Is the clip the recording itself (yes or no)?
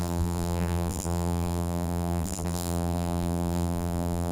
no